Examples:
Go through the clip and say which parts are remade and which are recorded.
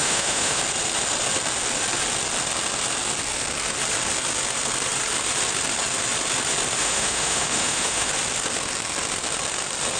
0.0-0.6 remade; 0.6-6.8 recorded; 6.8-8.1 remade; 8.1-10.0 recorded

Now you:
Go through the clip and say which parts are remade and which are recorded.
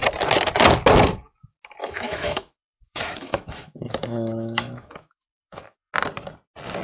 0.0-1.8 recorded; 1.8-5.9 remade; 5.9-6.8 recorded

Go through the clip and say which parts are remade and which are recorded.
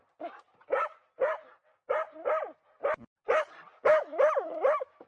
0.0-3.9 recorded; 3.9-5.1 remade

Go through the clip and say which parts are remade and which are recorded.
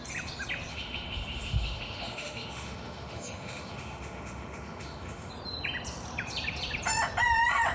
0.0-0.7 recorded; 0.7-5.3 remade; 5.3-7.7 recorded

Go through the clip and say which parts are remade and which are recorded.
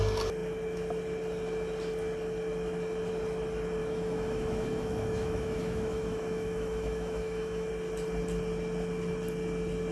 0.0-3.8 recorded; 3.8-7.7 remade; 7.7-9.9 recorded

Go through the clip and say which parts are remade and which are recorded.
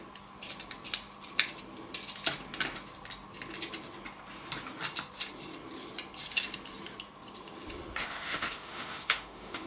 0.0-8.0 recorded; 8.0-9.7 remade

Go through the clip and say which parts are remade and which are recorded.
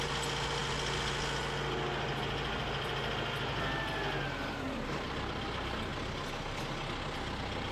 0.0-7.7 recorded